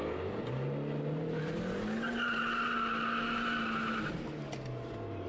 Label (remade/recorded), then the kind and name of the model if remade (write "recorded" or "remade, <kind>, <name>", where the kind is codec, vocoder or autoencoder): recorded